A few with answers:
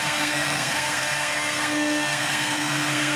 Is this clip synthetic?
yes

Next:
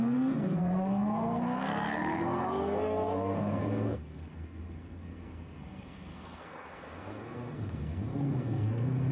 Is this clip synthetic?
yes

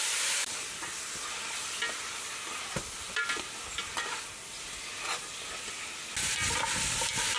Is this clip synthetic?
no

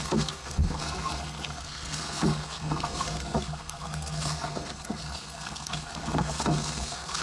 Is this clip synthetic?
yes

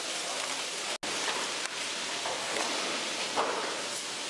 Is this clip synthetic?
no